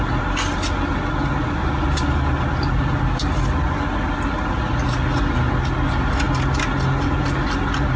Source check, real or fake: real